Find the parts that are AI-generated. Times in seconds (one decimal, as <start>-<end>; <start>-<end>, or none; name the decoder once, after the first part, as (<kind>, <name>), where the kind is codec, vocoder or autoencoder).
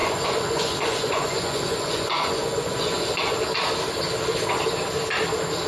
0.0-3.4 (vocoder, Vocos)